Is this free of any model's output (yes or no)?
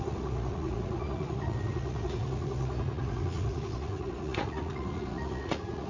no